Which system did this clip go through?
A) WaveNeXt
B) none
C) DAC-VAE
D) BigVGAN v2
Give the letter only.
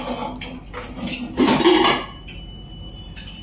B